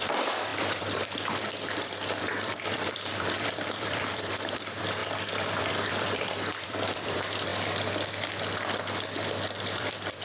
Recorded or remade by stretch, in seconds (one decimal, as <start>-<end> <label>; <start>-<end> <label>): 0.0-5.0 remade; 5.0-5.6 recorded; 5.6-7.5 remade; 7.5-9.6 recorded; 9.6-10.2 remade